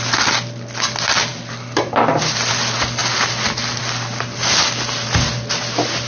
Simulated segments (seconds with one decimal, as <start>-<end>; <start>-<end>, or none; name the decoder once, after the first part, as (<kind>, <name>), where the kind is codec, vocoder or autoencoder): 1.3-2.5 (vocoder, BigVGAN v2)

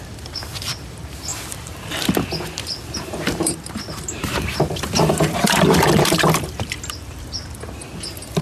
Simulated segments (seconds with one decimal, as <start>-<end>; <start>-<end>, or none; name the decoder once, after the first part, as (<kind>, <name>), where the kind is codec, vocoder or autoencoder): 0.0-1.3 (vocoder, BigVGAN v2); 3.0-7.8

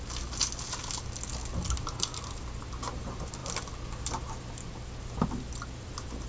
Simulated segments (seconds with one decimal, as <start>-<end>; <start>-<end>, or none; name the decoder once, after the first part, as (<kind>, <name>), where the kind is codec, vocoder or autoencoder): none